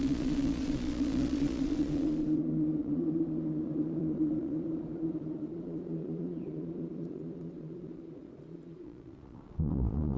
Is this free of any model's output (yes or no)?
no